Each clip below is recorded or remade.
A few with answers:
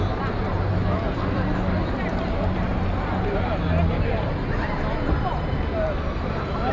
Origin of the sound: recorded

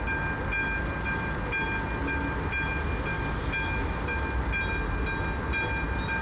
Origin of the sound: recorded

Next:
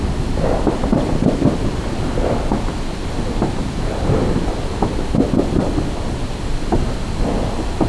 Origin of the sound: recorded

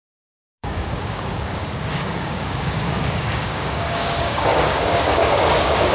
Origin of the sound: remade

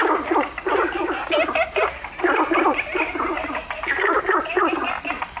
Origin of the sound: recorded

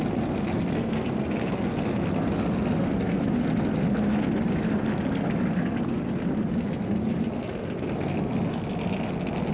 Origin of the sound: recorded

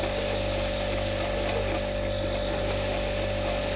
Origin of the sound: recorded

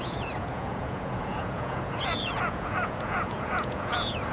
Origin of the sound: remade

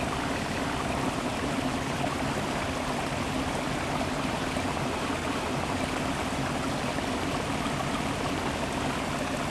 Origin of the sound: recorded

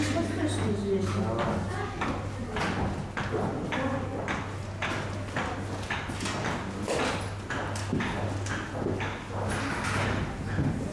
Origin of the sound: recorded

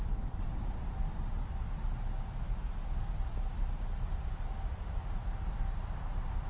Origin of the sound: recorded